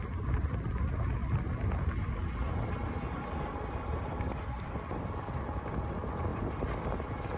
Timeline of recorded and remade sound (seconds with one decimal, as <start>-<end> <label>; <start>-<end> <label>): 0.0-7.4 recorded